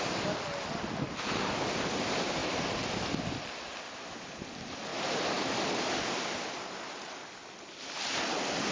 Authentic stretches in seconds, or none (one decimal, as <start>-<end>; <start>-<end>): 0.0-4.9; 5.7-8.7